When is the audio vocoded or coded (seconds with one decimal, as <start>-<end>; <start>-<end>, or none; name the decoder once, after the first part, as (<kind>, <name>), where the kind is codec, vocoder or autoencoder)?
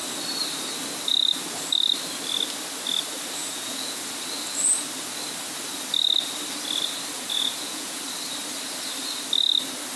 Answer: 3.4-4.0 (vocoder, Vocos); 7.1-8.0